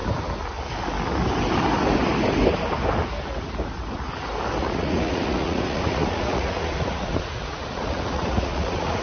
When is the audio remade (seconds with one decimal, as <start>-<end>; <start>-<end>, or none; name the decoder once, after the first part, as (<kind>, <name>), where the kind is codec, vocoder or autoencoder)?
4.6-9.0 (vocoder, Vocos)